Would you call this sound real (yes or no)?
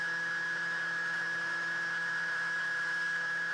no